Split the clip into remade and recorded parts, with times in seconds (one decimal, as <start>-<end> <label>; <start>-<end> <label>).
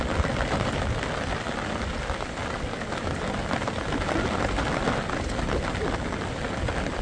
0.0-7.0 recorded